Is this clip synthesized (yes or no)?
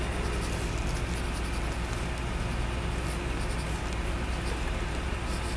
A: no